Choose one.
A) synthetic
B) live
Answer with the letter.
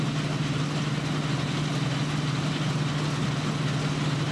B